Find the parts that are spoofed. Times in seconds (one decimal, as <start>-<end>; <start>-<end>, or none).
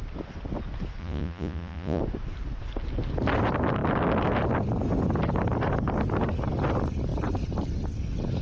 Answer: 1.0-2.0